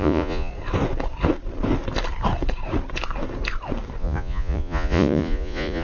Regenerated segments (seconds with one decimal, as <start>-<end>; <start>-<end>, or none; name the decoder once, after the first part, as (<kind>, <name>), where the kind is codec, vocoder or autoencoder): 0.0-0.5 (vocoder, Vocos); 4.0-5.8